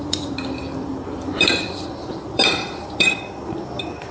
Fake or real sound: fake